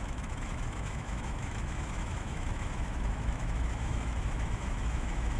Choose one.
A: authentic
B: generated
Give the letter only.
B